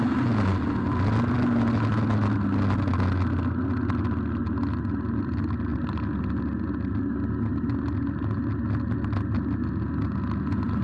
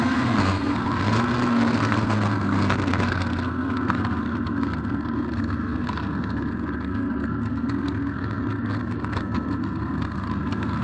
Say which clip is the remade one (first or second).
second